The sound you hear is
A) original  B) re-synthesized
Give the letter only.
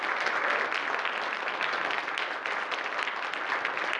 A